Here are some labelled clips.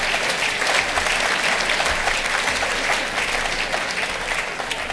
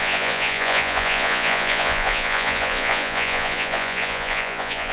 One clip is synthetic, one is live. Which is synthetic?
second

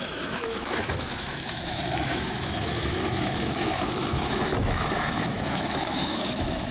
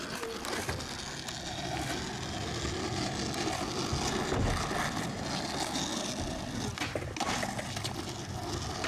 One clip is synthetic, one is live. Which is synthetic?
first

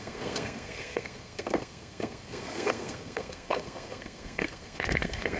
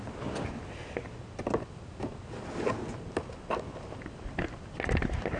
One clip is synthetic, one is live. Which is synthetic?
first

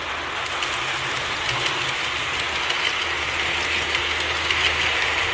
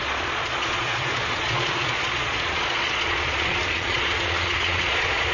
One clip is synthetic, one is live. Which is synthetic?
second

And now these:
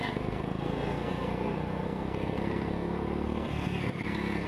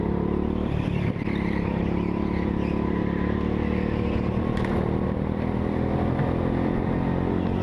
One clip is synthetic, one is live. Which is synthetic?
first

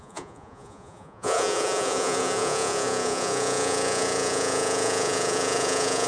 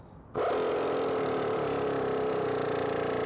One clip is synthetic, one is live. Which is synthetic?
first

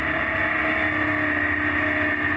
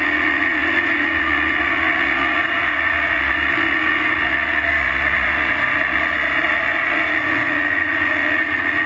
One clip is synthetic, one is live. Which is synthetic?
second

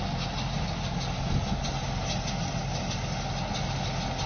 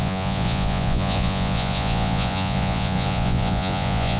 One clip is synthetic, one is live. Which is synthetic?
second